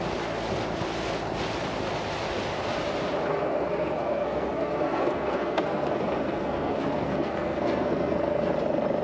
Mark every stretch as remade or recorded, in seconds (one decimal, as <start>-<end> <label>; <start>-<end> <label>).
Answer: 0.0-3.3 recorded; 3.3-8.5 remade; 8.5-9.0 recorded